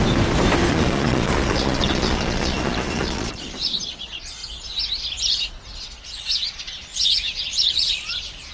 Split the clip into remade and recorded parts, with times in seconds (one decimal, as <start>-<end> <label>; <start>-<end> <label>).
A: 0.0-0.7 recorded; 0.7-4.4 remade; 4.4-6.2 recorded; 6.2-8.5 remade